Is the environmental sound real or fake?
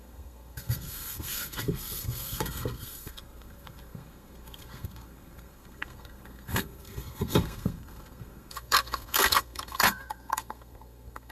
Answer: fake